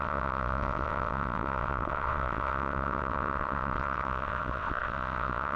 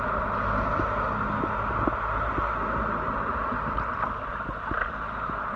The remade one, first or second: first